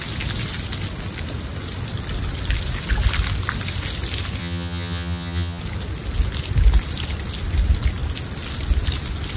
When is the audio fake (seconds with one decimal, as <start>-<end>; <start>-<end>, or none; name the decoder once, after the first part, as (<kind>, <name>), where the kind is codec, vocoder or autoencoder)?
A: 4.4-5.6 (vocoder, HiFi-GAN)